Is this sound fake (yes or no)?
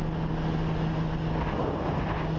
no